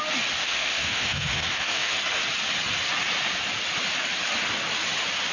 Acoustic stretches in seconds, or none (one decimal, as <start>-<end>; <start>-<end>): 0.0-0.4; 2.0-5.3

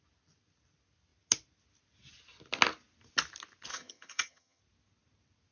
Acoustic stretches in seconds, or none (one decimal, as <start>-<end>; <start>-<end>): 0.0-3.7; 4.6-5.5

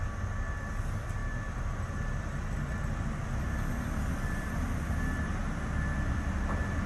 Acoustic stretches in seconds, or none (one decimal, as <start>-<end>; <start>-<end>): 0.0-1.2; 5.0-6.9

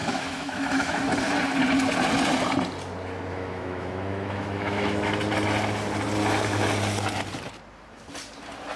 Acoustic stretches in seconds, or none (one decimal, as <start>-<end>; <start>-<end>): 1.0-3.3; 5.2-8.8

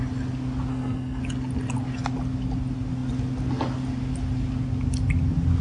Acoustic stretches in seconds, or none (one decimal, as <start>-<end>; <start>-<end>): 0.0-0.7; 1.2-5.6